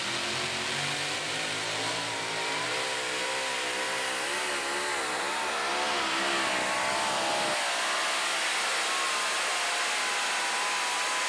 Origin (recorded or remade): recorded